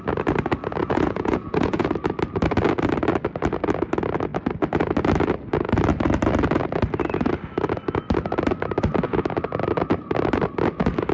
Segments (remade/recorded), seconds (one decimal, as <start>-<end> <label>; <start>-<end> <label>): 0.0-0.8 recorded; 0.8-1.9 remade; 1.9-11.1 recorded